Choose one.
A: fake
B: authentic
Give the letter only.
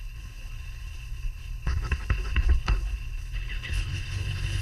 A